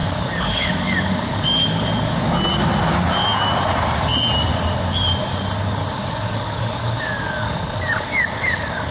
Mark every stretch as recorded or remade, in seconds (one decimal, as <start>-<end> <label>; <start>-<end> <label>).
0.0-2.6 remade; 2.6-6.1 recorded; 6.1-8.9 remade